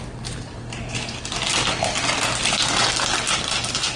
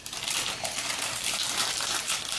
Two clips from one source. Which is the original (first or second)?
first